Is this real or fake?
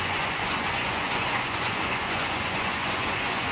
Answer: fake